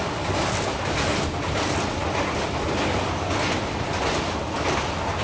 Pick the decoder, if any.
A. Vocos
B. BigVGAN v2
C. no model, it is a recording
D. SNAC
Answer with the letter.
C